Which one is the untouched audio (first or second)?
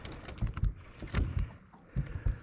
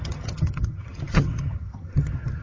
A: first